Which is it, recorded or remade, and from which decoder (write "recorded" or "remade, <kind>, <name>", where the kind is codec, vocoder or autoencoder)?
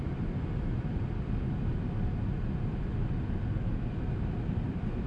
remade, vocoder, BigVGAN v2